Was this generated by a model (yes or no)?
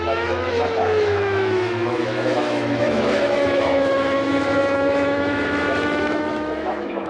yes